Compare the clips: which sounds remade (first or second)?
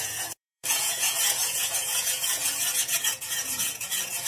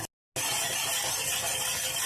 first